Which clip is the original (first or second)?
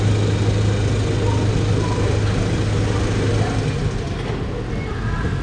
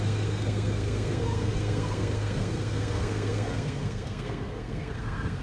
first